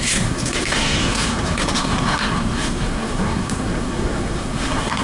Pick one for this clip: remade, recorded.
remade